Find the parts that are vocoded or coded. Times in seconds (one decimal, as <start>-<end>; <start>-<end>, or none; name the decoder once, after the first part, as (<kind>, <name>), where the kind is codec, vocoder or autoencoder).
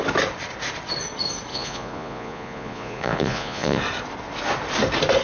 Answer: 1.5-3.8 (vocoder, Vocos)